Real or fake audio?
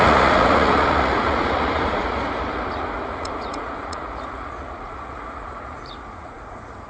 fake